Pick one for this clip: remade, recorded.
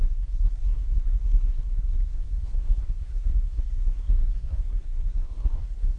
remade